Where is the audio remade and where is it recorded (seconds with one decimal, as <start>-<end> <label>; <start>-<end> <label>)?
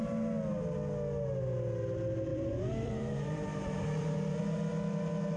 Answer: 0.0-2.3 recorded; 2.3-4.4 remade; 4.4-5.4 recorded